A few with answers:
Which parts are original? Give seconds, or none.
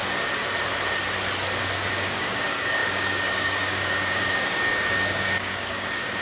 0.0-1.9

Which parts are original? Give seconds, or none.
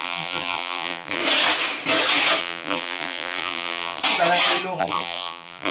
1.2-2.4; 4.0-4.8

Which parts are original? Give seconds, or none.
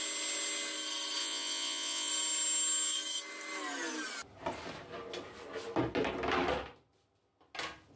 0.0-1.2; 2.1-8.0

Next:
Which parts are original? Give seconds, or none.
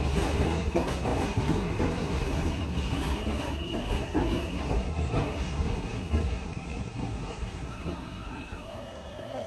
none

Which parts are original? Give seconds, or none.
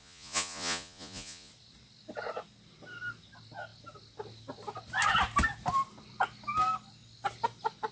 1.5-7.9